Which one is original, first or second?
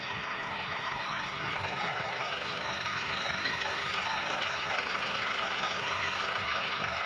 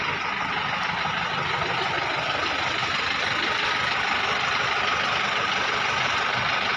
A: second